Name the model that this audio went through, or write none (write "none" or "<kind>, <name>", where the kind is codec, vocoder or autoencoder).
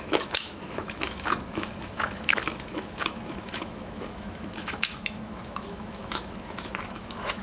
autoencoder, DAC-VAE